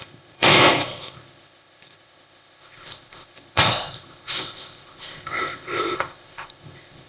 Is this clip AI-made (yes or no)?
yes